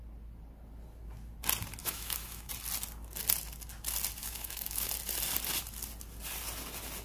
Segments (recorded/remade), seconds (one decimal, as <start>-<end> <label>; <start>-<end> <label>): 0.0-1.8 recorded; 1.8-2.5 remade; 2.5-4.2 recorded; 4.2-4.9 remade; 4.9-7.0 recorded